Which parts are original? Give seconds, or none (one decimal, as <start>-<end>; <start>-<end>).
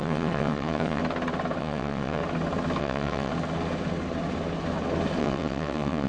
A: 1.0-1.6; 2.2-2.8; 3.3-5.2